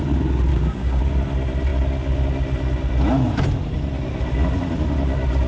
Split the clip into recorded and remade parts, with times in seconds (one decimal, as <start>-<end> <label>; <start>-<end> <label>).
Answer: 0.0-0.5 recorded; 0.5-1.0 remade; 1.0-5.5 recorded